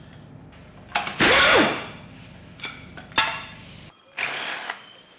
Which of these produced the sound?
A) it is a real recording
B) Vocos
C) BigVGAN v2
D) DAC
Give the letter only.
A